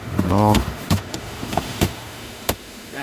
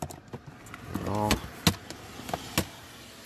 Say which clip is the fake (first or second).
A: first